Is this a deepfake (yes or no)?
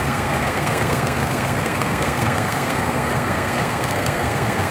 yes